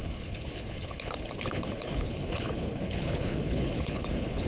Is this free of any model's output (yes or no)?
no